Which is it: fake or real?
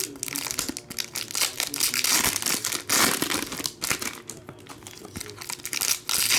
real